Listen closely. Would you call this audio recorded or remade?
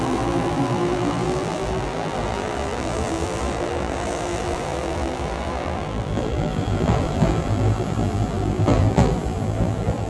remade